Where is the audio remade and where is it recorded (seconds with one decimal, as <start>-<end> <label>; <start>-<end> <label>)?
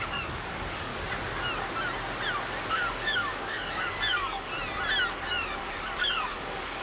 0.0-0.9 remade; 0.9-2.7 recorded; 2.7-4.5 remade; 4.5-5.1 recorded; 5.1-6.8 remade